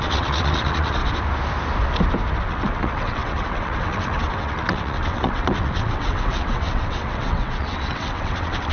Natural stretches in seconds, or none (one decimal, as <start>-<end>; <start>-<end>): 1.0-2.5